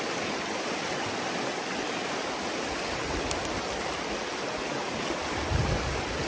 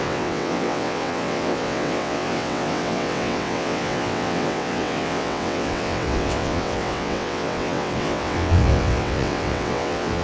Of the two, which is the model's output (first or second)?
second